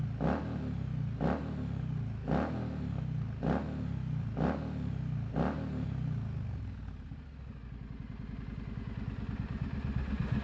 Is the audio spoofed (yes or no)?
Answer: no